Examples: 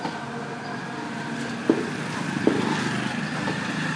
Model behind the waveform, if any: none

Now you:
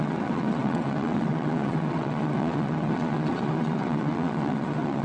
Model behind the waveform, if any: vocoder, WaveNeXt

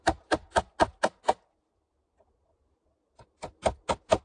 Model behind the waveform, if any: none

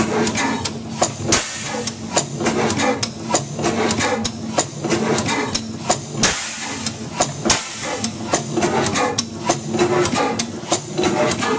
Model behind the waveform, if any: none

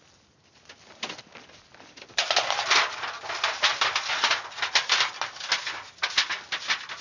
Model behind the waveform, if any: none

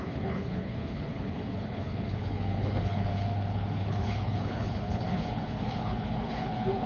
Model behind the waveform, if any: codec, HILCodec